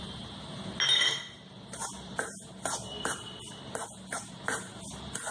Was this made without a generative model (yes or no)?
yes